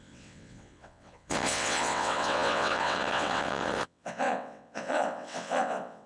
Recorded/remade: remade